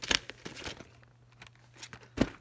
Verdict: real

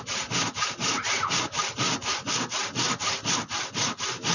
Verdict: real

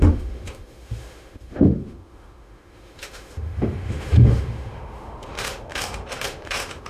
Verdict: fake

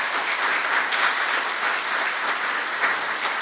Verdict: real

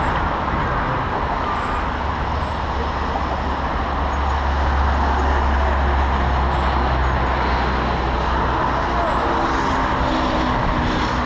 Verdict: real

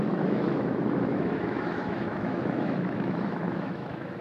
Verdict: fake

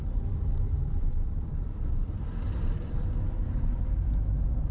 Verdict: fake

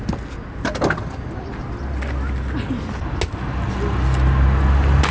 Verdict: real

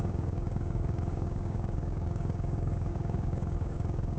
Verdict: fake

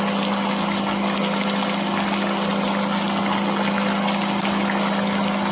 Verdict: real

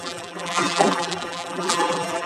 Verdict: fake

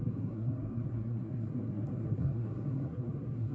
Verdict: fake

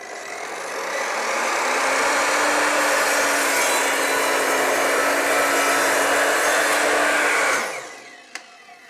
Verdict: real